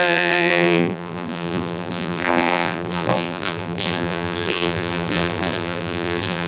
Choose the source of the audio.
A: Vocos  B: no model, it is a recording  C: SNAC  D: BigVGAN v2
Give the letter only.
D